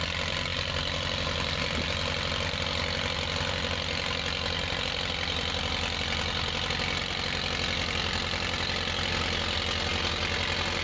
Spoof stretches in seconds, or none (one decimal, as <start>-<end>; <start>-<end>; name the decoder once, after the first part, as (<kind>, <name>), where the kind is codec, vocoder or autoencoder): none